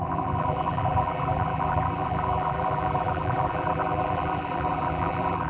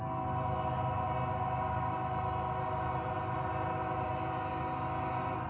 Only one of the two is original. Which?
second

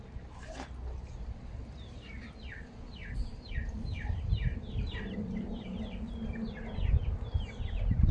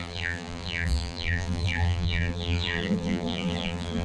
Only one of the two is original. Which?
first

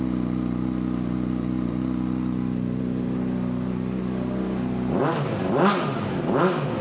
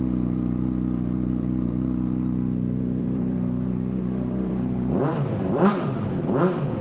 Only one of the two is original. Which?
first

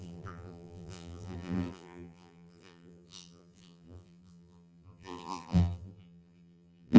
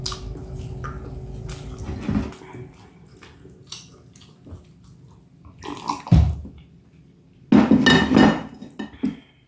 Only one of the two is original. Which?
second